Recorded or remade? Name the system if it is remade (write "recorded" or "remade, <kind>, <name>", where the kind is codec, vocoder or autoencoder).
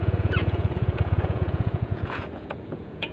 remade, vocoder, Vocos